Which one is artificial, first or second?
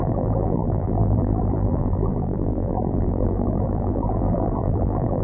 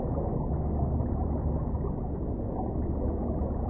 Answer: first